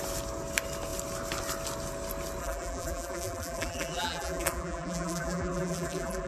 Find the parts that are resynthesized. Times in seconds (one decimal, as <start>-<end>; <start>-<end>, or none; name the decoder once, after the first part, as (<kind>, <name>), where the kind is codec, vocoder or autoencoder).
2.4-6.3 (vocoder, BigVGAN v2)